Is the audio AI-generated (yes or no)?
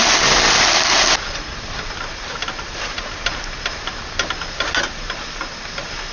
no